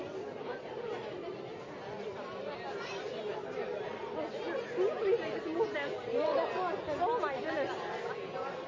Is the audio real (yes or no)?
yes